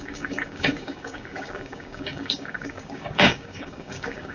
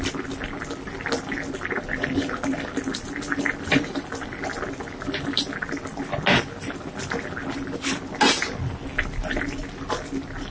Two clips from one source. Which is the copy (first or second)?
first